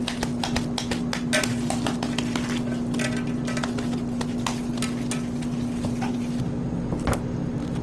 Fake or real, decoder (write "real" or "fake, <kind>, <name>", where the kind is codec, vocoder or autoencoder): real